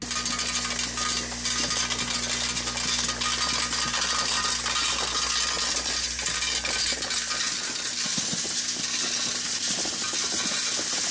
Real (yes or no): yes